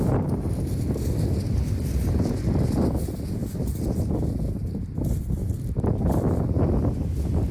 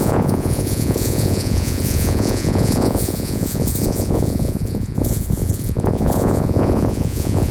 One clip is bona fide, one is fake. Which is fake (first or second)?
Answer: second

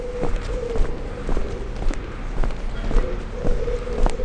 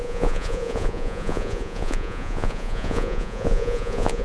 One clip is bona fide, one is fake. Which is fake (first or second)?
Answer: second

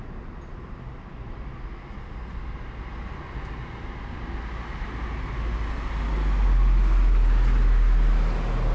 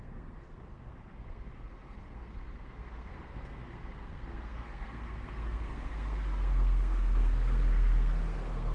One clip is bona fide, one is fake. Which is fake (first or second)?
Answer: second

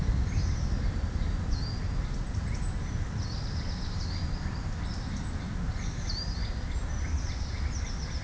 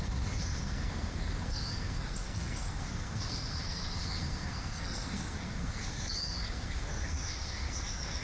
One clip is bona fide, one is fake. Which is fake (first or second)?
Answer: second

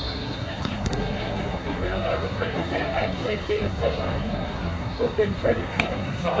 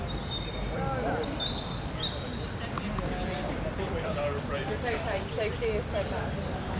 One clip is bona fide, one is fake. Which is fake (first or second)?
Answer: first